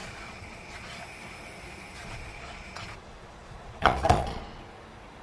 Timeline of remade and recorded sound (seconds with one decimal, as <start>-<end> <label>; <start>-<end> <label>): 0.0-0.9 remade; 0.9-2.0 recorded; 2.0-4.7 remade; 4.7-5.2 recorded